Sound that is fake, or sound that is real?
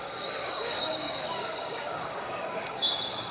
fake